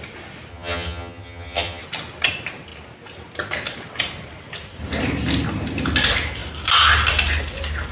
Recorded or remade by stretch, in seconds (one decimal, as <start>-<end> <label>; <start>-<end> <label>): 0.0-0.5 recorded; 0.5-1.8 remade; 1.8-7.9 recorded